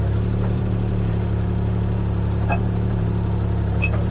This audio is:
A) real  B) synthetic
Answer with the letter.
B